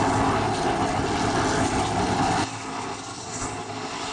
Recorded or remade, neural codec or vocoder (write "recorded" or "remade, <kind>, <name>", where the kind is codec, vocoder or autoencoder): recorded